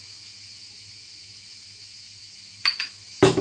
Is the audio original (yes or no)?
no